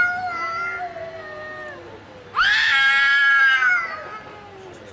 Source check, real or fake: real